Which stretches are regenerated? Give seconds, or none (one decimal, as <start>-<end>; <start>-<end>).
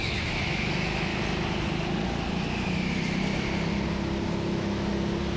0.0-1.1; 4.3-4.9